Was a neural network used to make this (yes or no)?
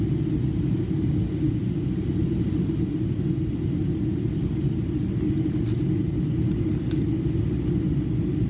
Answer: no